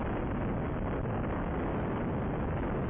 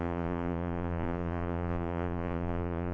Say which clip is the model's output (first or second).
second